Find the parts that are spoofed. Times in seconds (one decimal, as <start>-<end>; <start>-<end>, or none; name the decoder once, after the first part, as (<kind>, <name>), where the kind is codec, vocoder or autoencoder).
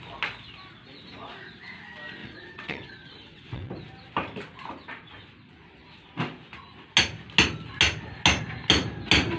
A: 2.2-3.7 (vocoder, WaveNeXt)